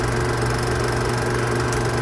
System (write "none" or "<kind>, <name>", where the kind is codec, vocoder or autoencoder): none